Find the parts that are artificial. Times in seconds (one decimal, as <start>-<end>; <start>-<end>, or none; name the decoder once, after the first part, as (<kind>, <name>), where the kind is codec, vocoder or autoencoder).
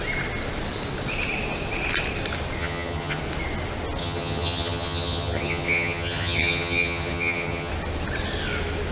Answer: 2.6-3.2 (vocoder, HiFi-GAN); 4.0-7.7